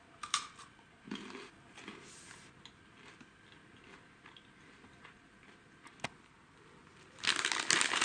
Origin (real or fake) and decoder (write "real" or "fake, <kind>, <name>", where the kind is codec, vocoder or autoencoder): real